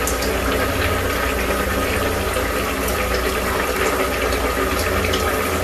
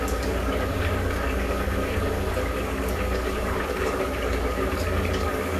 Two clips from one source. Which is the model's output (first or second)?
second